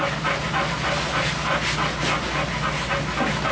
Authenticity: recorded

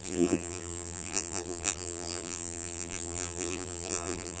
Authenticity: remade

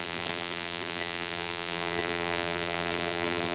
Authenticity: remade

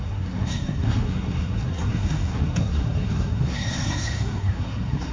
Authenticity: remade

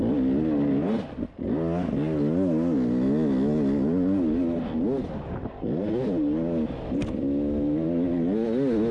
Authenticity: recorded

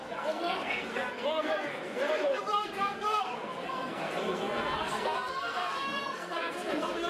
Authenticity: remade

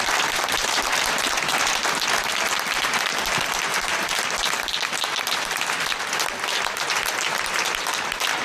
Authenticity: remade